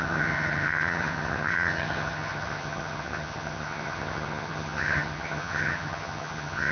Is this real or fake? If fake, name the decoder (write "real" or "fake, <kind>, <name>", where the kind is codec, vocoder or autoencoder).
fake, vocoder, HiFi-GAN